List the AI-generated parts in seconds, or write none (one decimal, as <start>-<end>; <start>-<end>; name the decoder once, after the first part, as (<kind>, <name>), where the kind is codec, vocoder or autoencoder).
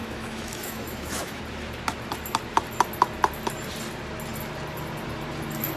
0.0-1.4 (autoencoder, DAC-VAE)